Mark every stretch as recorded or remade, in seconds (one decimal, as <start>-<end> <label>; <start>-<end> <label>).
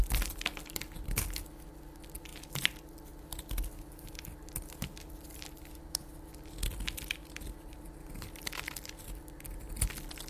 0.0-10.3 recorded